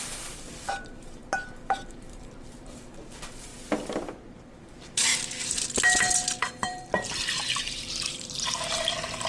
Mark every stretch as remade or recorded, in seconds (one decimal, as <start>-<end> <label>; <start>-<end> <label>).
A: 0.0-3.5 remade; 3.5-4.3 recorded; 4.3-5.1 remade; 5.1-6.4 recorded; 6.4-9.3 remade